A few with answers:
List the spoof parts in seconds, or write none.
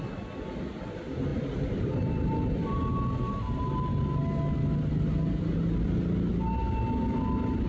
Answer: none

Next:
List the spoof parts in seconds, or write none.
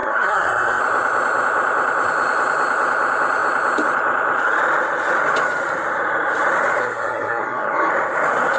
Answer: 0.0-0.8 (codec, SNAC); 6.8-7.9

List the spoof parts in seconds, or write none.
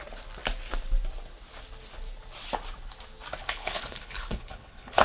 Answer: 3.4-5.0 (codec, HILCodec)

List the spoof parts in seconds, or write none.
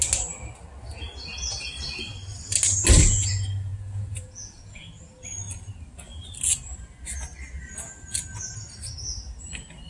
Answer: 3.7-4.9 (vocoder, Vocos)